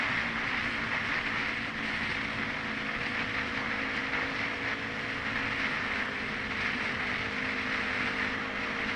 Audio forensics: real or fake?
real